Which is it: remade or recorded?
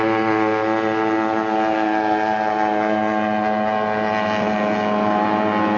recorded